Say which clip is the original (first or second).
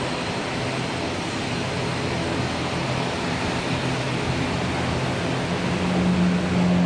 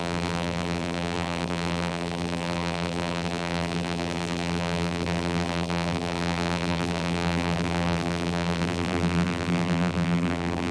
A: first